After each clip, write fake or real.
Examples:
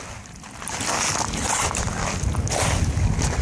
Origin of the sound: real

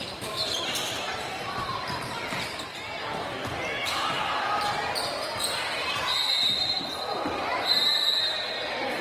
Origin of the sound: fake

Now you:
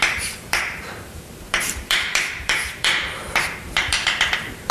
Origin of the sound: fake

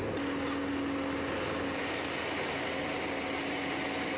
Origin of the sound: real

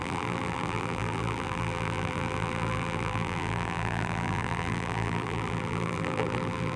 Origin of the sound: fake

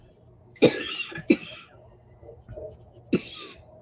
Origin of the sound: real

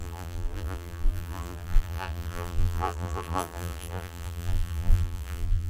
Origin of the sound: fake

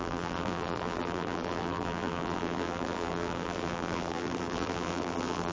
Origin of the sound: fake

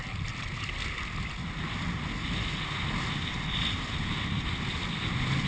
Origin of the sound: real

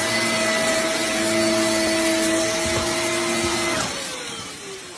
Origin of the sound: real